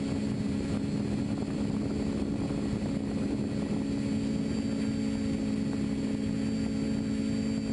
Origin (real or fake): real